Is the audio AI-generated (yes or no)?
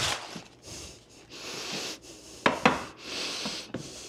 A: no